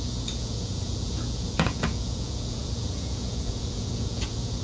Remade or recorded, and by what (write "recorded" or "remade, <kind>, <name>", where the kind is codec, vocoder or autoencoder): remade, vocoder, Vocos